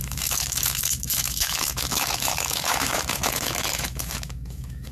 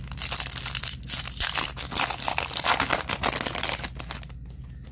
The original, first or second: second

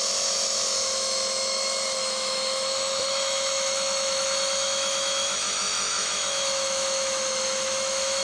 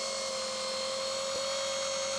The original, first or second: second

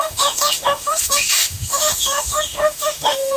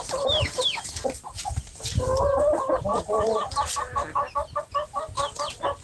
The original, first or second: second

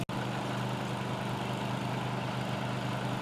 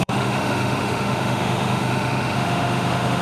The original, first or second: first